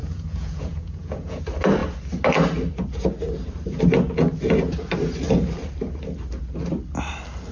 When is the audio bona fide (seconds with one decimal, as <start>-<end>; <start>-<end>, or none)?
1.4-7.5